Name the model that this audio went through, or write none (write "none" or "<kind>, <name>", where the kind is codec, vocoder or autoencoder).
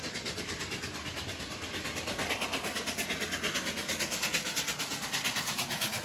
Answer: none